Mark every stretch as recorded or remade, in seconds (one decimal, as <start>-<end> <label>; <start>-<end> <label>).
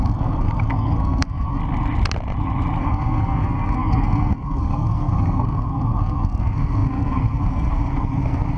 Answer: 0.0-1.6 remade; 1.6-2.8 recorded; 2.8-8.6 remade